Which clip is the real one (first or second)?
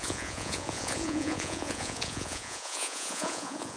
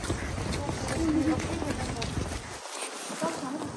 second